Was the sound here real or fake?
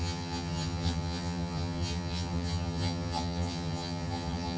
fake